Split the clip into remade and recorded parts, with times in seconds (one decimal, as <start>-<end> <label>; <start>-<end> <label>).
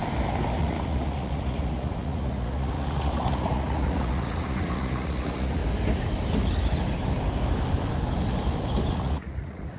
0.0-0.6 recorded; 0.6-5.6 remade; 5.6-8.9 recorded; 8.9-9.8 remade